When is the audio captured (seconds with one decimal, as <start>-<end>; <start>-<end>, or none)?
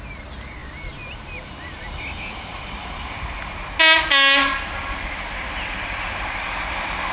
0.0-7.1